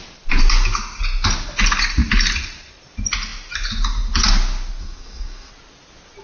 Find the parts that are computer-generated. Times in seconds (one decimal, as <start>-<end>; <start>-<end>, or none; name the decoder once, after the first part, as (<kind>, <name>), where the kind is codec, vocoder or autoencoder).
4.8-5.5 (codec, SNAC)